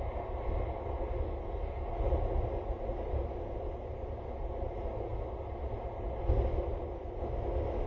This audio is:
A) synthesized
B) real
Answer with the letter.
B